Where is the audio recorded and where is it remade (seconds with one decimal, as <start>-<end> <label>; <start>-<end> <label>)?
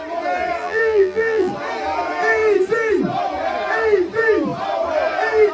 0.0-0.6 recorded; 0.6-1.5 remade; 1.5-5.5 recorded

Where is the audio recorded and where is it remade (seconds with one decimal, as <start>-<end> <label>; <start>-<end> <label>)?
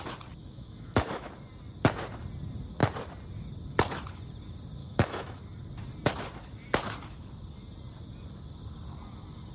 0.0-0.4 recorded; 0.4-1.3 remade; 1.3-4.8 recorded; 4.8-5.4 remade; 5.4-9.5 recorded